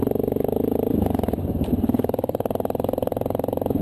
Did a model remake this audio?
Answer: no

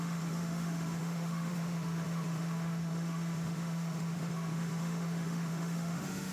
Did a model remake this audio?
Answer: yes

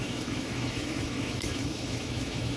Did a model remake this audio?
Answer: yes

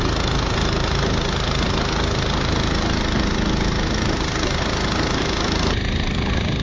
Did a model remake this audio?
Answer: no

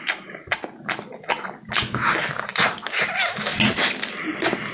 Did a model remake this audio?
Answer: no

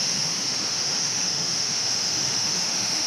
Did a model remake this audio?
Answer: yes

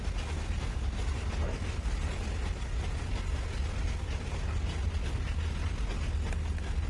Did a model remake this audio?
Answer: no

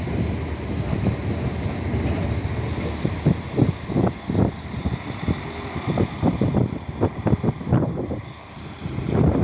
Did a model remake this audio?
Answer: no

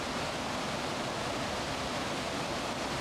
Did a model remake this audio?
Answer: no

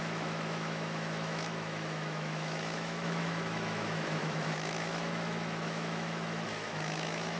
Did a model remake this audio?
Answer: yes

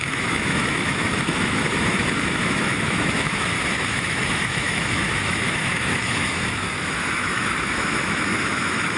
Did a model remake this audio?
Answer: yes